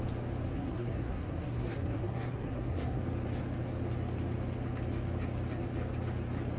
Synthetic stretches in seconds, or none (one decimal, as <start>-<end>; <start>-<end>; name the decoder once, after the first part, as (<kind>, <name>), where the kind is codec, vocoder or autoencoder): 0.5-3.0 (codec, SNAC)